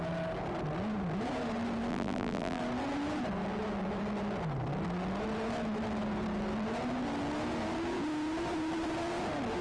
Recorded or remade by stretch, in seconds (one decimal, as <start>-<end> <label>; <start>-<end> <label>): 0.0-1.9 recorded; 1.9-2.6 remade; 2.6-9.6 recorded